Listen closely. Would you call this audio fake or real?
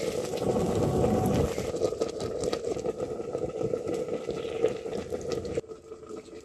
real